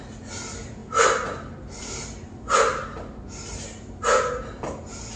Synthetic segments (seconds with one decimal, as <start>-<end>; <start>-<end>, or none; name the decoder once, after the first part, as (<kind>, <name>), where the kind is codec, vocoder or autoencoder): none